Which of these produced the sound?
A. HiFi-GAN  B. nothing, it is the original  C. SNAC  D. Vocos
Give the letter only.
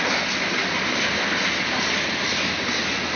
B